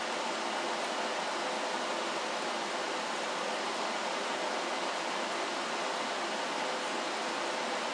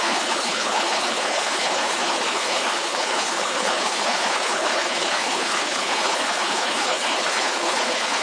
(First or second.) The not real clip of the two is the second